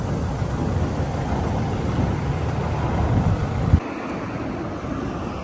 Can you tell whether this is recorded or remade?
recorded